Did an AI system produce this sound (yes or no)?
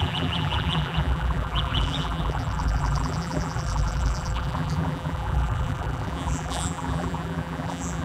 yes